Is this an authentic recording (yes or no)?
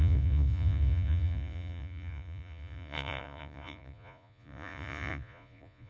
no